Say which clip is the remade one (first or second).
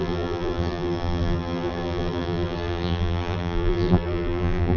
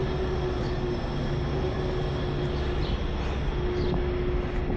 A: first